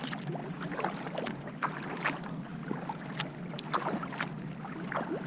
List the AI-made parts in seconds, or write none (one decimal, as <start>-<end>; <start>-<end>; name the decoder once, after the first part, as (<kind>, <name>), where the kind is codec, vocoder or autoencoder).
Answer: none